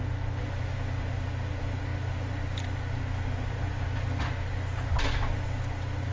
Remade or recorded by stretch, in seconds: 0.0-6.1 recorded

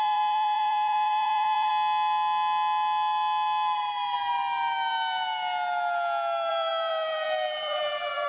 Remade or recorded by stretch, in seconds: 0.0-1.7 remade; 1.7-6.5 recorded; 6.5-8.3 remade

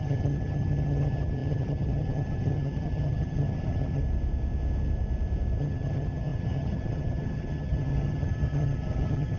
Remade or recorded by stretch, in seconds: 0.0-4.0 remade; 4.0-5.6 recorded; 5.6-9.4 remade

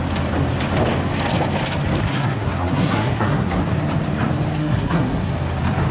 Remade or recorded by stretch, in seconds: 0.0-2.0 recorded; 2.0-3.6 remade; 3.6-4.6 recorded; 4.6-5.3 remade; 5.3-5.9 recorded

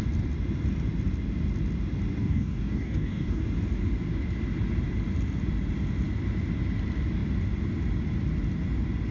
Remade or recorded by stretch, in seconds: 0.0-2.2 recorded; 2.2-3.4 remade; 3.4-9.1 recorded

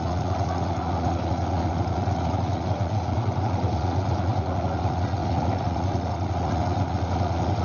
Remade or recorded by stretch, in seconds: 0.0-7.6 remade

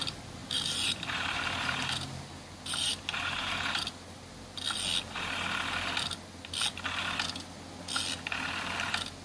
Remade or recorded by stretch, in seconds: 0.0-0.4 recorded; 0.4-4.3 remade; 4.3-9.2 recorded